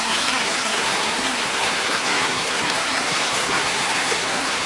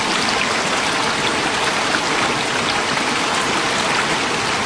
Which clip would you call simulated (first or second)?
first